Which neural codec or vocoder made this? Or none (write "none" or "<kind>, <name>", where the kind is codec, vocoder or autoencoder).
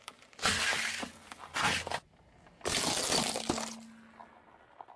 none